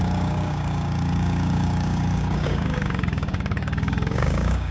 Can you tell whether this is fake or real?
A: fake